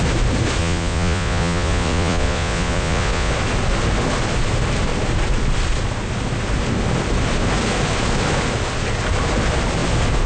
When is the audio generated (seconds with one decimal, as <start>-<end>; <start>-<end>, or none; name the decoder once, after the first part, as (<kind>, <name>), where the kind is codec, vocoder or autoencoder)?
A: 0.6-3.3 (vocoder, Vocos)